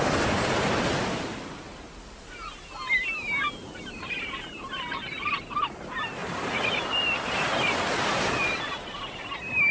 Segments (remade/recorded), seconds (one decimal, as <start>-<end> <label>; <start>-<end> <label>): 0.0-9.7 recorded